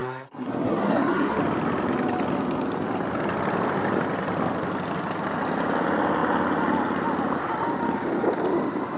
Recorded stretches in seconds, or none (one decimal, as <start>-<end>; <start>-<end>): 1.4-9.0